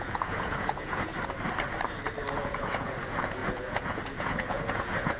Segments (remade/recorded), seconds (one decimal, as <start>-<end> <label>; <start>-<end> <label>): 0.0-1.1 remade; 1.1-2.3 recorded; 2.3-5.2 remade